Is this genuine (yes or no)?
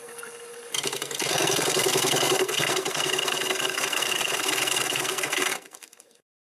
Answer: no